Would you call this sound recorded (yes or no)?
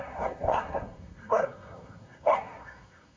no